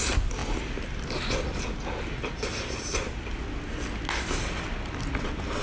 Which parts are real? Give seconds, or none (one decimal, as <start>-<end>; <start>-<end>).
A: 0.0-5.6

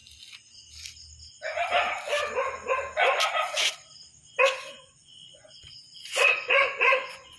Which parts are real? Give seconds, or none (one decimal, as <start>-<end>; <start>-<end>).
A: 0.0-4.4

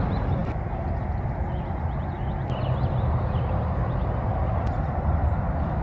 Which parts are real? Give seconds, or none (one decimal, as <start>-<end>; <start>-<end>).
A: 0.0-5.8

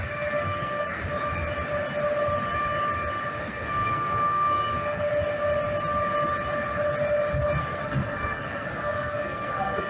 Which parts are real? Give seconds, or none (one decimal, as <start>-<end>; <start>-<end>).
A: 1.0-3.4; 5.1-7.6

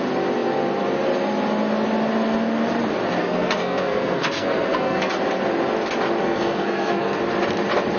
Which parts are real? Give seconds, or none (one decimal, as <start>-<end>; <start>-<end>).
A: 0.0-3.2; 5.1-6.2; 7.2-8.0

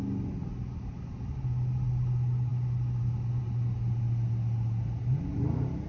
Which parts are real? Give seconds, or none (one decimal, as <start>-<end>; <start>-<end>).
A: 0.0-5.9